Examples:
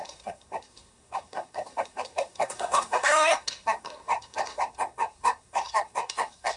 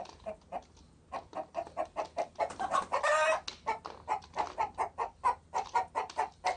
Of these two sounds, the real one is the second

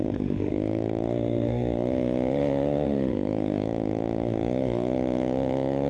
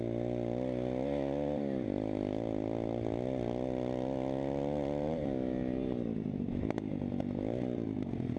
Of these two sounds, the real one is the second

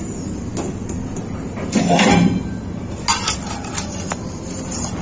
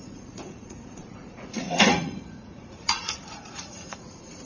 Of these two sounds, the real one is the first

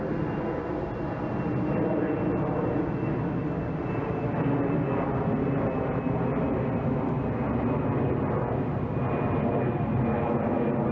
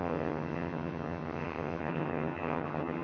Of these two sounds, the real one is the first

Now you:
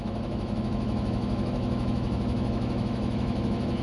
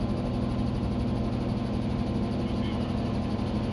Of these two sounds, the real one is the second